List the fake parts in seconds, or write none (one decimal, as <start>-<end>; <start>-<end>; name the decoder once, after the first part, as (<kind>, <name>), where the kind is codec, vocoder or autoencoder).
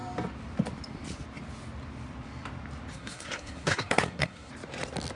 2.9-4.5 (codec, SNAC)